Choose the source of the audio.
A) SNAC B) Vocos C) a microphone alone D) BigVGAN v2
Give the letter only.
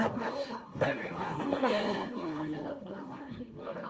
A